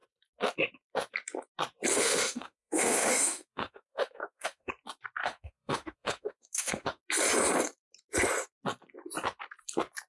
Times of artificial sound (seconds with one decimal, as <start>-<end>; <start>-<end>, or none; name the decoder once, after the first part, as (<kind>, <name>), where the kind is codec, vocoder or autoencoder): 1.9-4.7 (autoencoder, DAC-VAE); 5.2-7.0